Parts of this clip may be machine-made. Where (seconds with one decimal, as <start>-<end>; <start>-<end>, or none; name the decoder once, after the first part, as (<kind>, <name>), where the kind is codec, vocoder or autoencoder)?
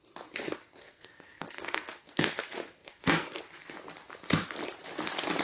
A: 0.8-2.4 (codec, SNAC); 2.8-3.4